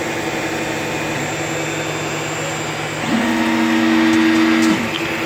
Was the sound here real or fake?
real